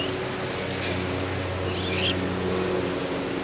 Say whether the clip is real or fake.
real